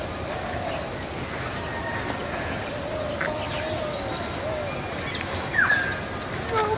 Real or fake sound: real